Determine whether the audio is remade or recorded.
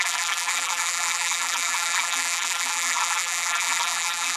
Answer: remade